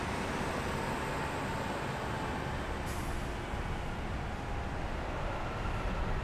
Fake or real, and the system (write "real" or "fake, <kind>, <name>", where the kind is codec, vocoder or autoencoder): real